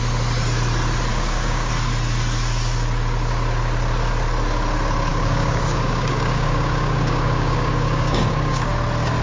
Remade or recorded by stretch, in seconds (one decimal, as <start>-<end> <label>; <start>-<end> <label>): 0.0-1.1 recorded; 1.1-1.7 remade; 1.7-5.1 recorded; 5.1-8.7 remade; 8.7-9.2 recorded